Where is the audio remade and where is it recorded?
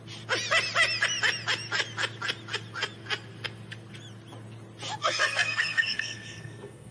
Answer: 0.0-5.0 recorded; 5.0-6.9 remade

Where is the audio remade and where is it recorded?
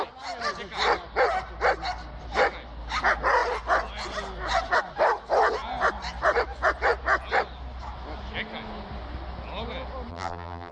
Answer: 0.0-10.1 recorded; 10.1-10.7 remade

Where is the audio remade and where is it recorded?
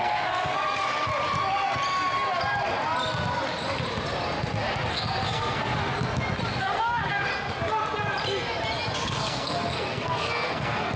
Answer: 0.0-1.1 remade; 1.1-4.9 recorded; 4.9-5.7 remade; 5.7-6.6 recorded; 6.6-7.3 remade; 7.3-9.0 recorded; 9.0-11.0 remade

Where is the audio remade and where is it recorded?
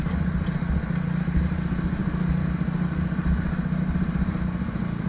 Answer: 0.0-5.1 recorded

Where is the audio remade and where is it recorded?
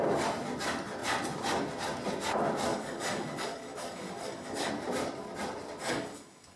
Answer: 0.0-2.7 recorded; 2.7-4.7 remade; 4.7-5.8 recorded; 5.8-6.6 remade